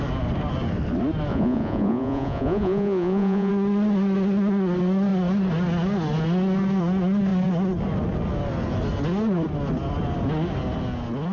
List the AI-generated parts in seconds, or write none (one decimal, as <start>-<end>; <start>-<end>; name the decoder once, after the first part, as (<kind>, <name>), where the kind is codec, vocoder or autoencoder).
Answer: 1.3-3.5 (vocoder, Vocos)